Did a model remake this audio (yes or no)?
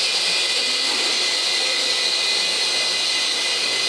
no